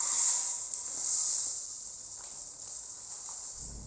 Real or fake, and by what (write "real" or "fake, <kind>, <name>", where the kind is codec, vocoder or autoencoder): real